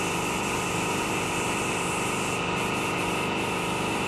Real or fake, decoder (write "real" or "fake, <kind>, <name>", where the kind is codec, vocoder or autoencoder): real